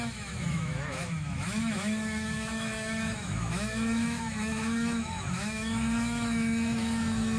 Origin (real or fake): fake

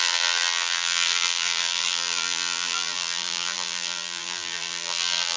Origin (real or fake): fake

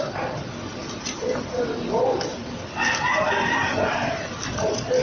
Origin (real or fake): real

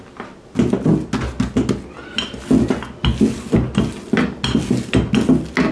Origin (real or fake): real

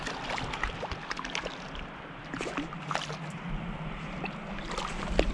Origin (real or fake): real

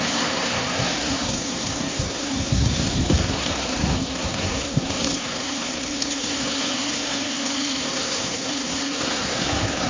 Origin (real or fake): fake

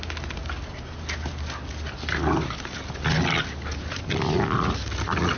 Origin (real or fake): real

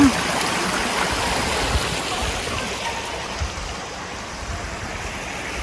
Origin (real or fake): real